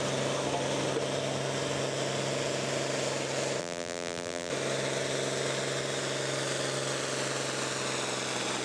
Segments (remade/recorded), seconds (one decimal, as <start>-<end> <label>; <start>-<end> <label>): 0.0-3.6 recorded; 3.6-4.5 remade; 4.5-8.6 recorded